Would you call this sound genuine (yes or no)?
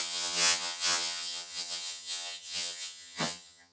no